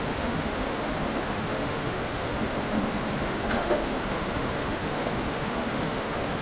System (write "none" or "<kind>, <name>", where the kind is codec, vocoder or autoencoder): autoencoder, DAC-VAE